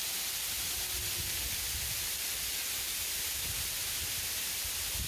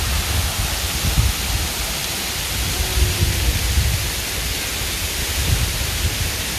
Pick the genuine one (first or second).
second